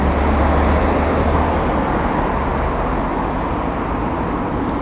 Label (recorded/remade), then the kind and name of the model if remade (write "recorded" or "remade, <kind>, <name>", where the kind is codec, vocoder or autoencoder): recorded